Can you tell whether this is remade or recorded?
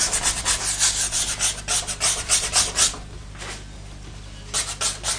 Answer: recorded